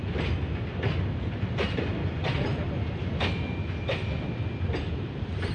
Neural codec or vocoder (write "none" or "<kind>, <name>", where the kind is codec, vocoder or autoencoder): none